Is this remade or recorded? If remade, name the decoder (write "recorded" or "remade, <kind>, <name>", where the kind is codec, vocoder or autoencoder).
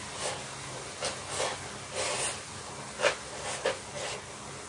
recorded